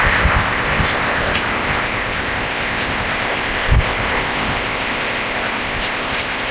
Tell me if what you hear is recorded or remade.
remade